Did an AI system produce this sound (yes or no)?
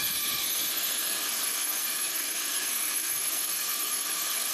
yes